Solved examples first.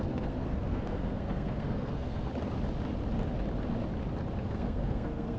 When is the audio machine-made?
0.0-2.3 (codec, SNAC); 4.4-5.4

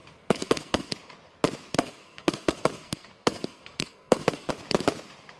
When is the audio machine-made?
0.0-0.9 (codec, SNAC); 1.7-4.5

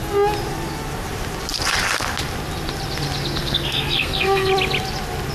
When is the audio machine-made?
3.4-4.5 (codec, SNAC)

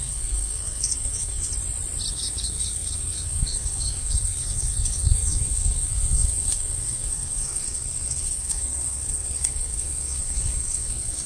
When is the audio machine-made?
0.0-1.5 (codec, SNAC); 2.1-11.3

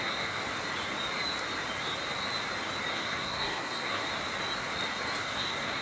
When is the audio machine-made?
0.0-0.4 (codec, SNAC); 2.9-4.1; 5.2-5.8

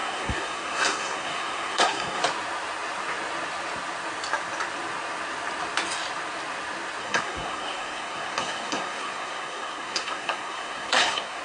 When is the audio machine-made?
0.0-2.2 (codec, SNAC); 7.0-11.4

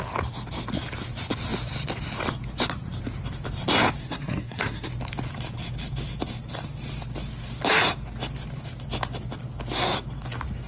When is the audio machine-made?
4.0-4.9 (codec, SNAC)

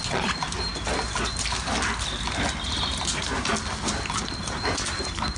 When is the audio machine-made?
none